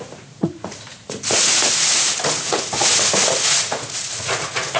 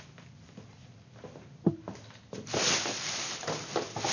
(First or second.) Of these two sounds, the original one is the second